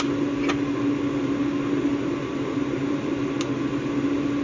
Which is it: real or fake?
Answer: real